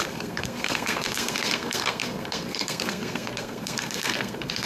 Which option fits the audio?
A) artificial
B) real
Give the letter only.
A